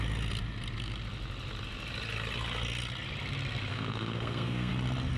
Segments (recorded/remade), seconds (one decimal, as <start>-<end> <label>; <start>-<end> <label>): 0.0-3.7 recorded; 3.7-4.7 remade; 4.7-5.2 recorded